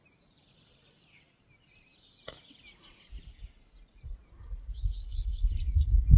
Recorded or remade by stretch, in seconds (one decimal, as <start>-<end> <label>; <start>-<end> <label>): 0.0-5.0 recorded; 5.0-5.5 remade; 5.5-6.2 recorded